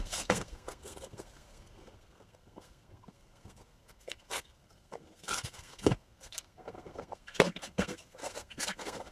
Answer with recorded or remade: remade